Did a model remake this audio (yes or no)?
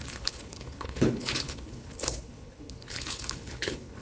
yes